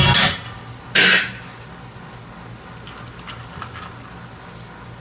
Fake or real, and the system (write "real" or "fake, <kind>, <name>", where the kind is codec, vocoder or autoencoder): real